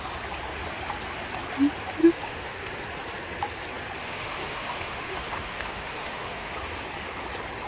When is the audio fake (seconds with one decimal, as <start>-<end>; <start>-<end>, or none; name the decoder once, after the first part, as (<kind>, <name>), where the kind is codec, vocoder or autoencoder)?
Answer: 2.0-2.7 (autoencoder, DAC-VAE); 4.0-6.5